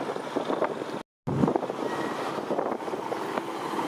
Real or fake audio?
real